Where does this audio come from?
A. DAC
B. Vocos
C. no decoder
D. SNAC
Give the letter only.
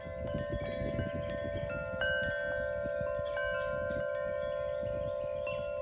C